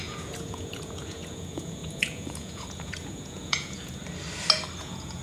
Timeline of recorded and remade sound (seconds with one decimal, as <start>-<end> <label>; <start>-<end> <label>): 0.0-4.0 remade; 4.0-4.8 recorded; 4.8-5.2 remade